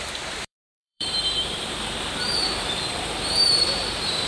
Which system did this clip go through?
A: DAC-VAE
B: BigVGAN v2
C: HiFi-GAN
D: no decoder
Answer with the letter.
B